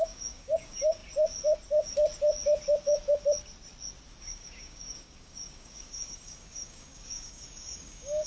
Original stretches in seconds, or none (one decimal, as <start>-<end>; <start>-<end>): 1.0-4.2